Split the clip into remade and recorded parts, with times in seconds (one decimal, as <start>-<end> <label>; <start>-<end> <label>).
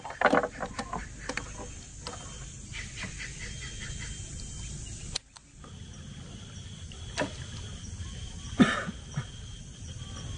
0.0-10.4 recorded